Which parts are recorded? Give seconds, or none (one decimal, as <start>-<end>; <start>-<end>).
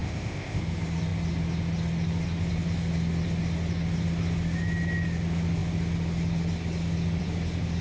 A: 0.6-7.8